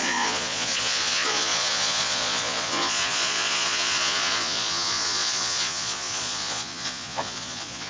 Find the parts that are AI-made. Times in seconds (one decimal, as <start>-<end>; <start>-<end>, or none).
0.0-7.9